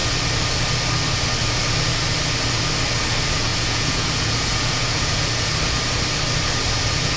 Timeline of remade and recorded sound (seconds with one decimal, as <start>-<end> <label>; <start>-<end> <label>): 0.0-3.5 recorded; 3.5-5.5 remade; 5.5-7.2 recorded